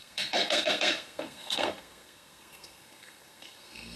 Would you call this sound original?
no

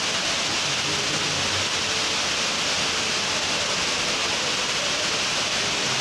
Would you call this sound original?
yes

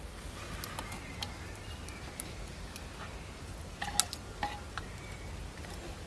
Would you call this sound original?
yes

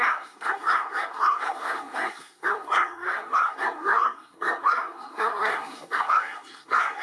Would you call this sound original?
no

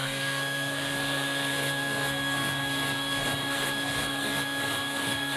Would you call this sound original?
no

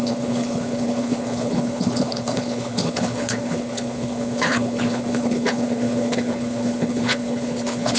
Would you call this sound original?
no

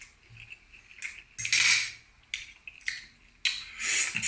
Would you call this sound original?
yes